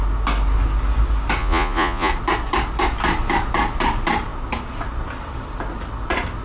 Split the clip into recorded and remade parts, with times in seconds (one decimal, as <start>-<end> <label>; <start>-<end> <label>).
0.0-1.4 recorded; 1.4-2.1 remade; 2.1-6.4 recorded